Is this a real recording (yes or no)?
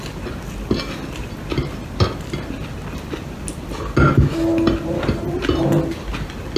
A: yes